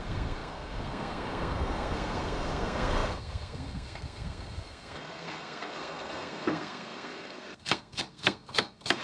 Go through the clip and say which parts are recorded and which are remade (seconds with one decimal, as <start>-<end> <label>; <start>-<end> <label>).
0.0-9.0 remade